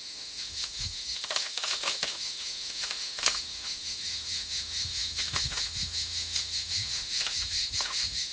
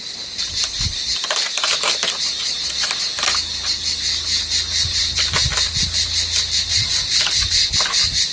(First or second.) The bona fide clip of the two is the second